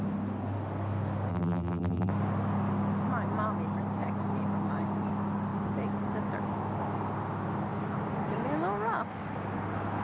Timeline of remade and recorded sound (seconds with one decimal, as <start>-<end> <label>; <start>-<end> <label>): 0.0-1.3 recorded; 1.3-2.1 remade; 2.1-10.0 recorded